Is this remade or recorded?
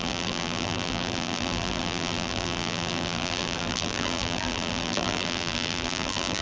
remade